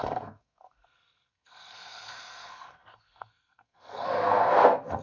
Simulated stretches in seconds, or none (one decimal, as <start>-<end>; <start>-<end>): 0.0-5.0